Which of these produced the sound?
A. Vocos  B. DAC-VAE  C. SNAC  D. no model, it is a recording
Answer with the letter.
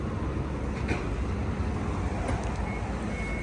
D